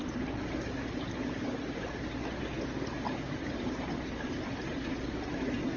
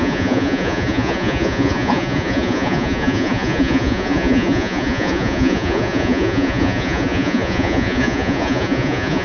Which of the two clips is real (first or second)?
first